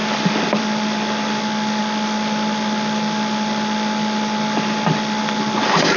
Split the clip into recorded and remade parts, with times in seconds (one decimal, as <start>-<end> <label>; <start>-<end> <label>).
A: 0.0-6.0 recorded